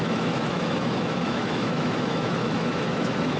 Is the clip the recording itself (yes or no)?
no